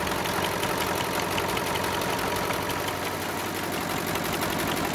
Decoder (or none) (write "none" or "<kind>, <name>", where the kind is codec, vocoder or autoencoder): none